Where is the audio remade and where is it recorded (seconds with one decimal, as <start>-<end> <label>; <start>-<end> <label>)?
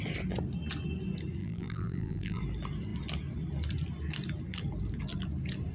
0.0-1.4 recorded; 1.4-2.4 remade; 2.4-5.7 recorded